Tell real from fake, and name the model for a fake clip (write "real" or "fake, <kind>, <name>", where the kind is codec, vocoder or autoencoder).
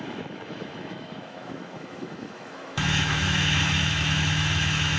fake, autoencoder, DAC-VAE